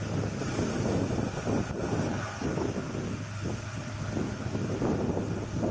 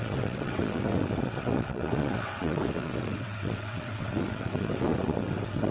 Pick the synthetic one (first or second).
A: second